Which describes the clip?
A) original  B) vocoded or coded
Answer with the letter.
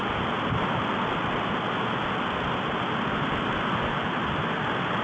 A